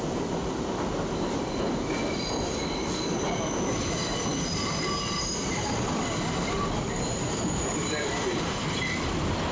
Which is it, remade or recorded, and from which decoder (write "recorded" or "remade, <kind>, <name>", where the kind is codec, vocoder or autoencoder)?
recorded